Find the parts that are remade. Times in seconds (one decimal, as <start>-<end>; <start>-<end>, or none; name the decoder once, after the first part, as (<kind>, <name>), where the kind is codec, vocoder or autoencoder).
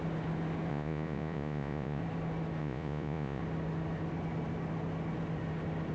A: 0.7-2.0 (vocoder, Vocos); 2.6-3.4